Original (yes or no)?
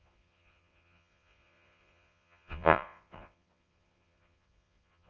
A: no